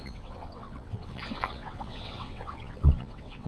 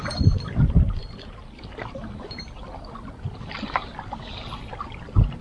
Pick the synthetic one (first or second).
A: first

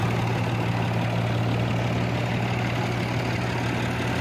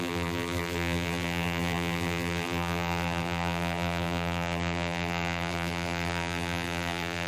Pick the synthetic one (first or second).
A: second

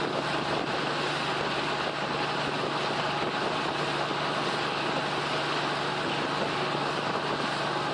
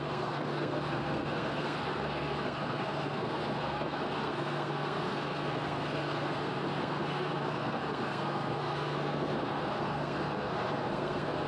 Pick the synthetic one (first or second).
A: second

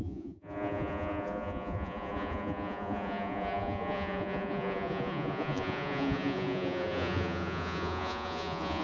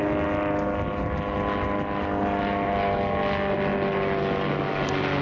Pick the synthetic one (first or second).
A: first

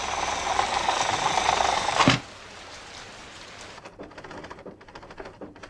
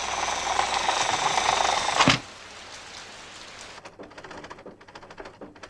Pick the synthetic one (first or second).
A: first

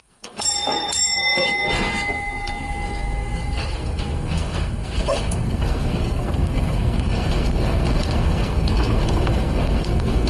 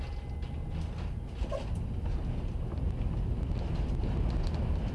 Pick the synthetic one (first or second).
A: first